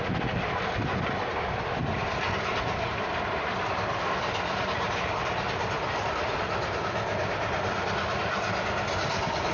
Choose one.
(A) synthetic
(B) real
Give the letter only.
B